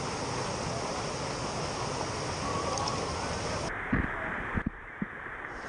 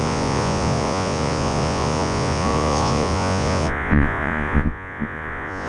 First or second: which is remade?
second